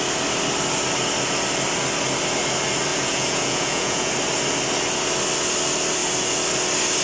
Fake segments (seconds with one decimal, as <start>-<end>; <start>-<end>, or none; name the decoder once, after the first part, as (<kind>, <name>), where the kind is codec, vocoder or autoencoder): 2.9-4.1 (vocoder, Vocos)